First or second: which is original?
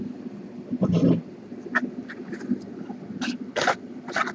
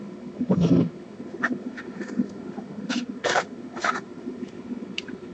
first